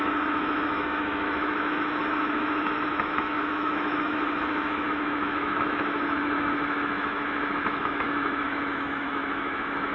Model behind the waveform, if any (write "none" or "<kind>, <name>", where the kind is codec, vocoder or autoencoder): autoencoder, DAC-VAE